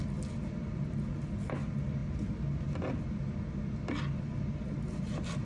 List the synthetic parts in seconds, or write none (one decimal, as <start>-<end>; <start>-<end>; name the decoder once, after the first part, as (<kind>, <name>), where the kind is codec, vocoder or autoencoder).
none